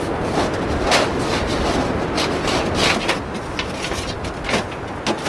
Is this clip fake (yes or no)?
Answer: no